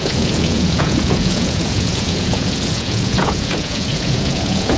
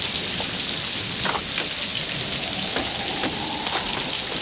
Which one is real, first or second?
second